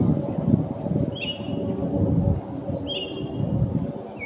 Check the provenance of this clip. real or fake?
real